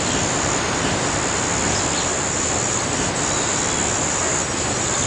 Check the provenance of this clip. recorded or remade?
recorded